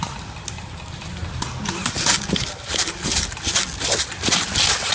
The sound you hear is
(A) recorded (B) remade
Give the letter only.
A